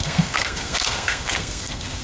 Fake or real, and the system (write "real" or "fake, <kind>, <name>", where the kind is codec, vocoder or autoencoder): fake, codec, SNAC